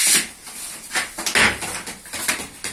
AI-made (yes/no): no